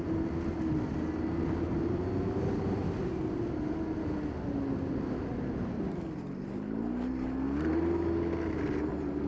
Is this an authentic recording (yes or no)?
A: yes